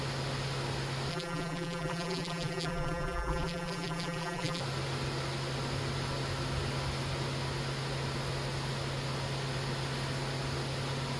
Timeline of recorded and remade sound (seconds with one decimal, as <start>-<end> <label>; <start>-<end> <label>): 0.0-1.1 recorded; 1.1-4.6 remade; 4.6-11.2 recorded